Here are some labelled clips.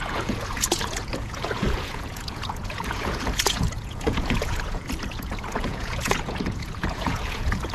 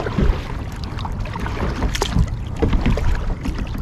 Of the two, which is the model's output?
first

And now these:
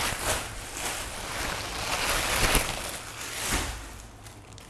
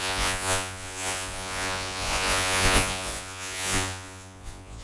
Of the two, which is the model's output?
second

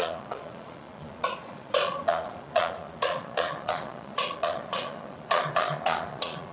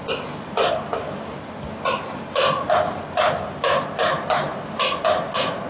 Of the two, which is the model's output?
first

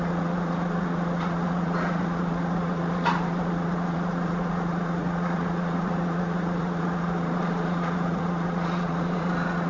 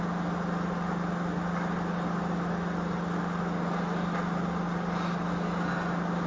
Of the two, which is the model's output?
first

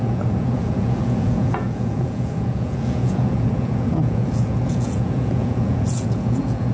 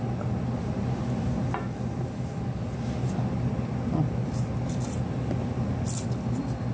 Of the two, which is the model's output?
first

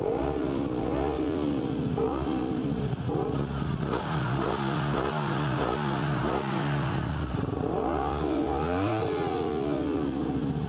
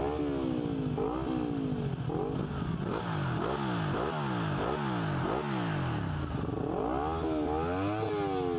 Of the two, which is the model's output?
first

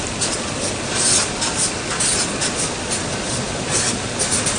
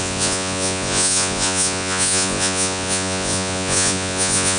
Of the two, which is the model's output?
second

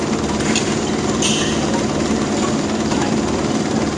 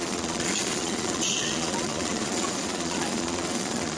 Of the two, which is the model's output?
second